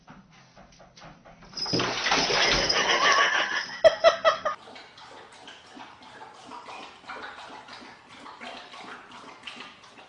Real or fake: real